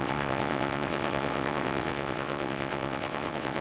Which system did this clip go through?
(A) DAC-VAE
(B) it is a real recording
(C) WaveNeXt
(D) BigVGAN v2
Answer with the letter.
C